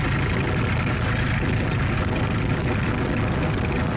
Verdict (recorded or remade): recorded